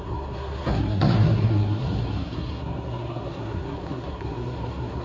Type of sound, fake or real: fake